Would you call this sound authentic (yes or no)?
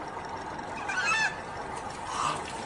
yes